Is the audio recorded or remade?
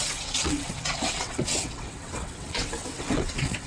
remade